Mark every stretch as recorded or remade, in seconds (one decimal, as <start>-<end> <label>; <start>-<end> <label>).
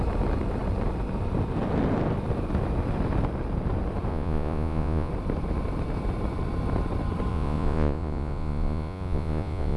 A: 0.0-4.1 recorded; 4.1-5.1 remade; 5.1-7.3 recorded; 7.3-9.8 remade